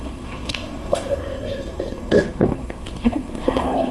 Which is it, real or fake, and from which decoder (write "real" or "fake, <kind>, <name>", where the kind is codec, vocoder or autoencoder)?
fake, codec, SNAC